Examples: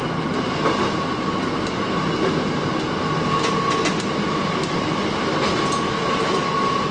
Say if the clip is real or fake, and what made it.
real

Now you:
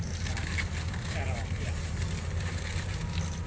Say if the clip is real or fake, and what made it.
real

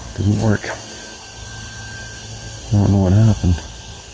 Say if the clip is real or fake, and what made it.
real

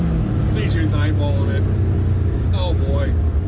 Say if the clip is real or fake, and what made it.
real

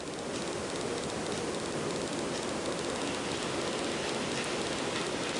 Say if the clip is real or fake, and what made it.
real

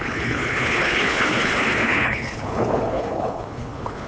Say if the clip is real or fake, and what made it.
fake, codec, HILCodec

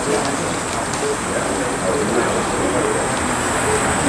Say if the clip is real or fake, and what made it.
real